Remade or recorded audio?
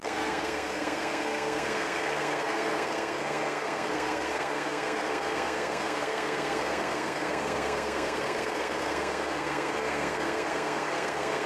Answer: remade